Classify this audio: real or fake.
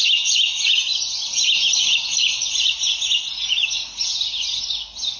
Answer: real